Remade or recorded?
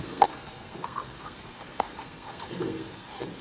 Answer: remade